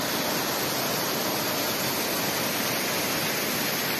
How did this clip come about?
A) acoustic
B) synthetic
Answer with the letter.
A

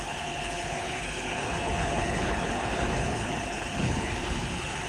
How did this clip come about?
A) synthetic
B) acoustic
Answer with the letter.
A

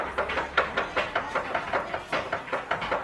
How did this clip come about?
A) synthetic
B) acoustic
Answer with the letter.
B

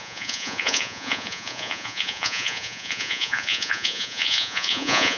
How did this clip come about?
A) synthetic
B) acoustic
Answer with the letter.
A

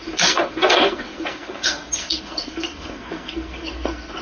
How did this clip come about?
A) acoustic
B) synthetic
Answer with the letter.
B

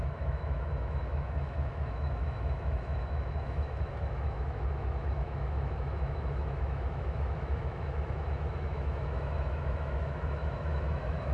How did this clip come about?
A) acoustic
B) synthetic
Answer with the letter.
B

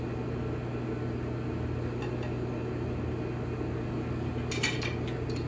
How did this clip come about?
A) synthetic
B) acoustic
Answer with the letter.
B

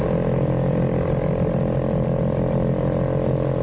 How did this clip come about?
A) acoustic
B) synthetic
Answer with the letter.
A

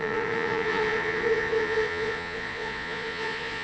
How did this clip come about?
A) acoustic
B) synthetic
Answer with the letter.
B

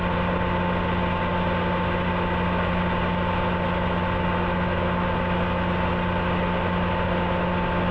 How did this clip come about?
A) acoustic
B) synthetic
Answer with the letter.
A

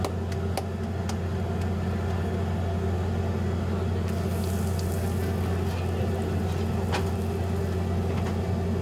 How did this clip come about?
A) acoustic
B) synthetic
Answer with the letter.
A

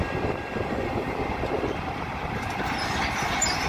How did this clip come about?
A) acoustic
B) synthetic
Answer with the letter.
B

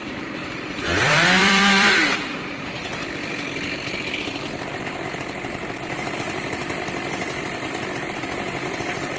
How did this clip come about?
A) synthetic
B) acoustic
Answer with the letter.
A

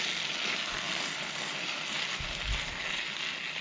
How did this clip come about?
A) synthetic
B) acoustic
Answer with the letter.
B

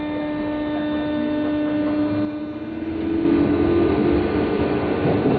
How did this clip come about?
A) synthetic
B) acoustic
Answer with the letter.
B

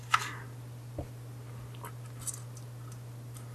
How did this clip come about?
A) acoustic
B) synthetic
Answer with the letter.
A